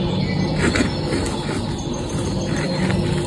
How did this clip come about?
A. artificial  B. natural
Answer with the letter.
B